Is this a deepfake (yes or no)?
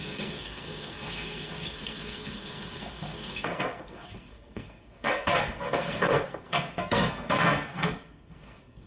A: yes